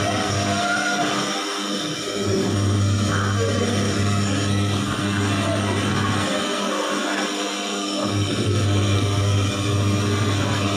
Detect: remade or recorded remade